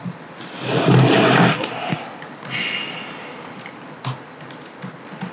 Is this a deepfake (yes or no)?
no